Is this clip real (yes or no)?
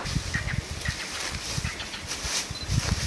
yes